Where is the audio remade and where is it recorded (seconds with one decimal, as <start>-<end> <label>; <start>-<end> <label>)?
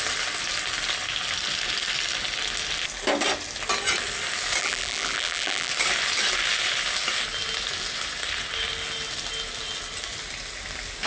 0.0-4.6 recorded; 4.6-5.7 remade; 5.7-11.1 recorded